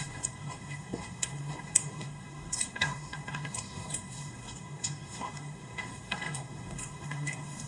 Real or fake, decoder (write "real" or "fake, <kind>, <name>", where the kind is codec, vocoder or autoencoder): fake, codec, SNAC